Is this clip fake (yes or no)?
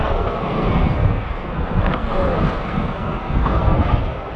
yes